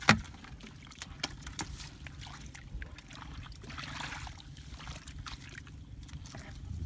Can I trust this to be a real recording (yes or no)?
yes